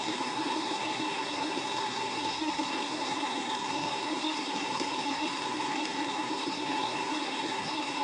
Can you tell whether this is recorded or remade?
remade